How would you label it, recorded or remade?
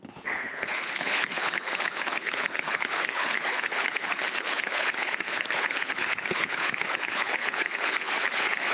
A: remade